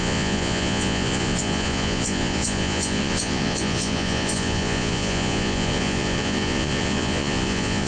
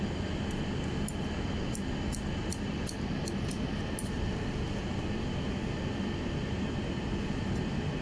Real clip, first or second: second